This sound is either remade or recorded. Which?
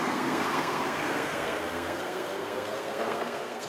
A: remade